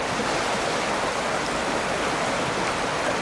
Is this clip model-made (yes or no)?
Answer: no